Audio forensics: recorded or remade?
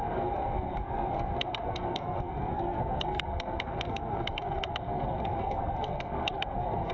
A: remade